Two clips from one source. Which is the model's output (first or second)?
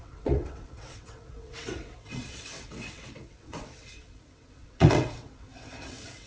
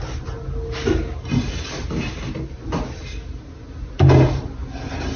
first